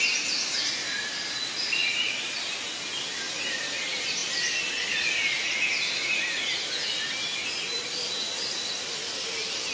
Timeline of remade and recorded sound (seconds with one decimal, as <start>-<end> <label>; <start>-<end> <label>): 0.0-9.7 recorded